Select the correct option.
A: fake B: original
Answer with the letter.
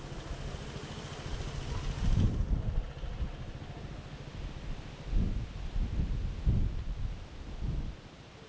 B